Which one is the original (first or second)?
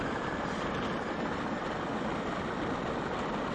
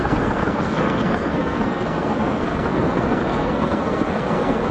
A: first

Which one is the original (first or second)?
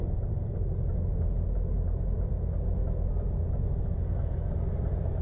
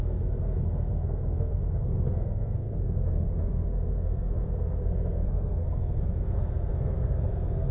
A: first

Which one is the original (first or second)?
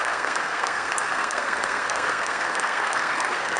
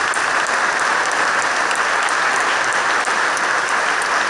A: second